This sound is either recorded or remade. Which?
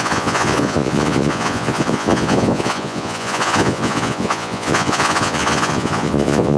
remade